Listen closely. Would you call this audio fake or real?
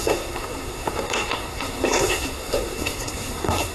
fake